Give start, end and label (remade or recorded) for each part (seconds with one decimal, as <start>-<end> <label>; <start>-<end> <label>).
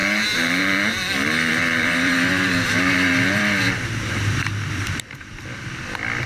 0.0-1.5 recorded; 1.5-5.3 remade; 5.3-6.3 recorded